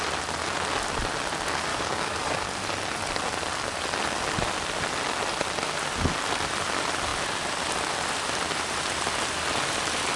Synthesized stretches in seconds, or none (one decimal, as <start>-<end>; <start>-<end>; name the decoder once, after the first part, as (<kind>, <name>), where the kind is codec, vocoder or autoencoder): 1.7-2.4 (codec, DAC)